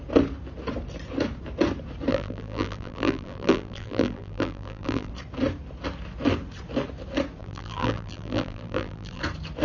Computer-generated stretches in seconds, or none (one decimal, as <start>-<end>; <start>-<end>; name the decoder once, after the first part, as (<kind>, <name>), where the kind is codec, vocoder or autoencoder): 2.1-5.1 (vocoder, BigVGAN v2); 7.4-9.2